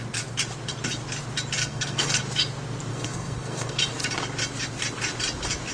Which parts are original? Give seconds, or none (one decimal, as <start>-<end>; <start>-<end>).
0.0-1.6; 2.2-2.9; 3.8-5.7